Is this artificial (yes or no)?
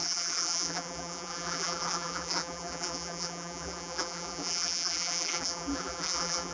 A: yes